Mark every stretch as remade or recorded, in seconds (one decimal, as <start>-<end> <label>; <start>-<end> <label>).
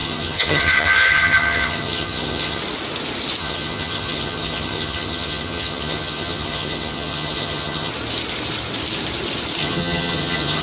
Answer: 0.0-2.6 remade; 2.6-3.4 recorded; 3.4-7.9 remade; 7.9-9.6 recorded; 9.6-10.6 remade